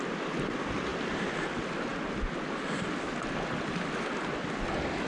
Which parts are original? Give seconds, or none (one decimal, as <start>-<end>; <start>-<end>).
0.0-5.1